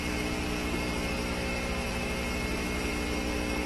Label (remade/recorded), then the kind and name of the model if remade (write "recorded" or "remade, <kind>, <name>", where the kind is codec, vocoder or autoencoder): remade, autoencoder, DAC-VAE